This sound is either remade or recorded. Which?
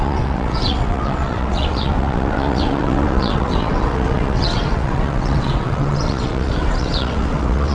remade